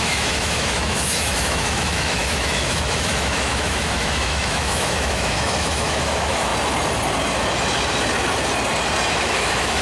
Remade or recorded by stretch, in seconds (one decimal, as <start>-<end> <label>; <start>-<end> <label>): 0.0-6.5 remade; 6.5-9.1 recorded; 9.1-9.8 remade

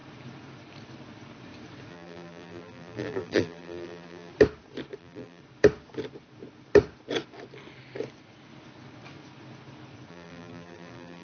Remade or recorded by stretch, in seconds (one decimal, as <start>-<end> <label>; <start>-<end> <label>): 0.0-1.9 recorded; 1.9-4.3 remade; 4.3-5.0 recorded; 5.0-5.4 remade; 5.4-10.1 recorded; 10.1-11.2 remade

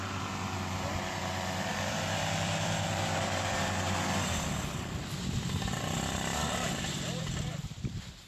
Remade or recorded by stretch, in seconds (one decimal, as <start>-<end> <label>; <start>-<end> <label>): 0.0-1.7 recorded; 1.7-3.6 remade; 3.6-8.3 recorded

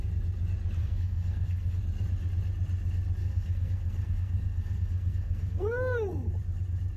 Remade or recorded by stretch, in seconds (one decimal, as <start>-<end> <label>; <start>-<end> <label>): 0.0-0.8 recorded; 0.8-1.8 remade; 1.8-3.2 recorded; 3.2-6.3 remade; 6.3-7.0 recorded

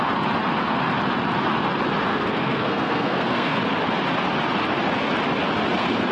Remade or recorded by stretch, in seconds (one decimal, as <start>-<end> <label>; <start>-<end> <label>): 0.0-2.1 recorded; 2.1-3.6 remade; 3.6-6.1 recorded

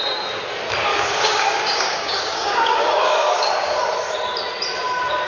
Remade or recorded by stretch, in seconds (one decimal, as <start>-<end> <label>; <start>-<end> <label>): 0.0-0.9 recorded; 0.9-3.8 remade; 3.8-5.3 recorded

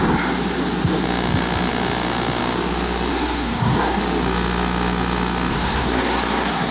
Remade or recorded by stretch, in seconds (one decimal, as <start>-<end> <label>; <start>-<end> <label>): 0.0-3.1 recorded; 3.1-4.0 remade; 4.0-5.5 recorded; 5.5-6.7 remade

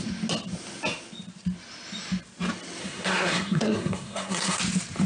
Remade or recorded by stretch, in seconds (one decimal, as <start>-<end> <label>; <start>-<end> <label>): 0.0-2.8 recorded; 2.8-4.6 remade; 4.6-5.1 recorded